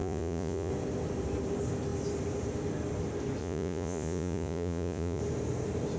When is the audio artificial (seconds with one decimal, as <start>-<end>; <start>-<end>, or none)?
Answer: 0.0-0.7; 3.4-5.2